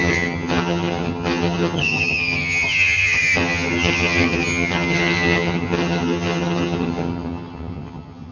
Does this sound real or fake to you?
fake